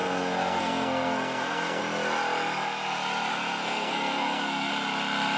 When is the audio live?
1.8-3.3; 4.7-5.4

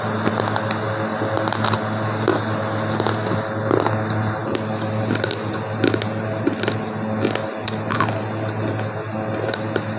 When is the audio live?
0.0-10.0

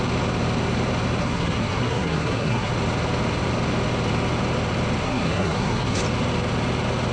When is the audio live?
0.0-1.2; 2.7-5.0; 6.0-7.1

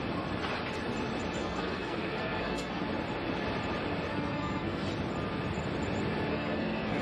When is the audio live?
0.0-1.4; 2.8-4.1; 4.9-6.3

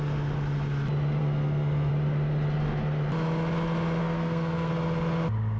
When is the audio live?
0.0-1.2; 1.9-4.0; 4.7-5.6

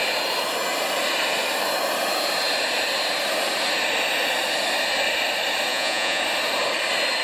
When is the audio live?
0.0-5.7; 6.2-7.2

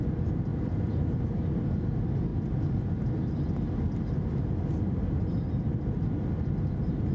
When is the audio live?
0.0-0.5; 1.2-7.1

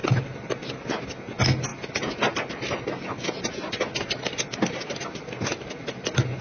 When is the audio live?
0.5-6.4